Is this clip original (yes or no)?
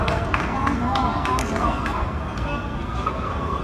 no